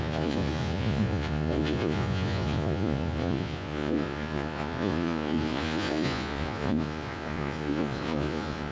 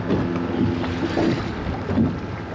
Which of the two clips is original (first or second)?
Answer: second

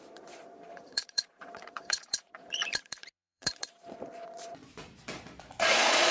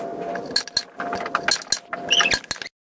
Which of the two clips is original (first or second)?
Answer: second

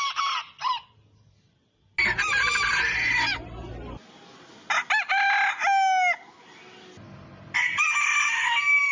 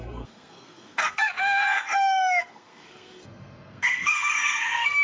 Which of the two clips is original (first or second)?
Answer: first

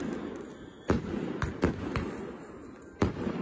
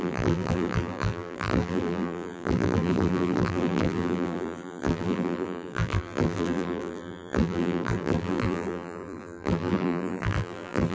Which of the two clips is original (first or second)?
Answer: first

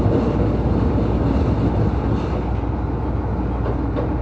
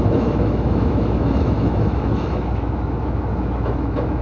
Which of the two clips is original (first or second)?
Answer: first